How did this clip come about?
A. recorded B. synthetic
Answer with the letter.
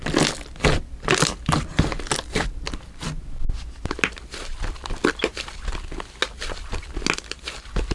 A